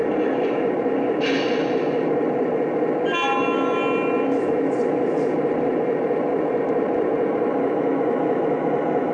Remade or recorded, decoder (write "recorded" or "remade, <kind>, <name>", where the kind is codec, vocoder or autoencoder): recorded